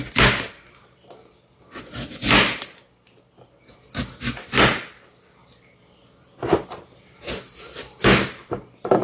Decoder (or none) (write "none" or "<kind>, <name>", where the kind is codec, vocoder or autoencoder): none